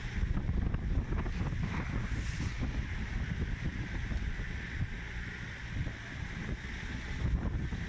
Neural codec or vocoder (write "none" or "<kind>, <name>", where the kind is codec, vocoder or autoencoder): none